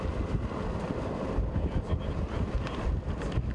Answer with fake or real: real